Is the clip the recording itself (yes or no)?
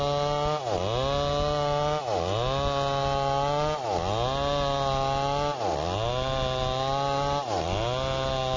yes